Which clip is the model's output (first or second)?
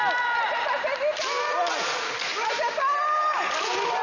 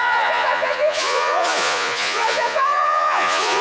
second